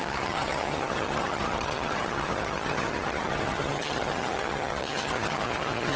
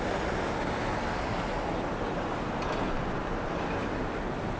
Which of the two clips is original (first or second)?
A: second